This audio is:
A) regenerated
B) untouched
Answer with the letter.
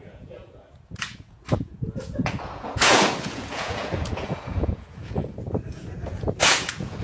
A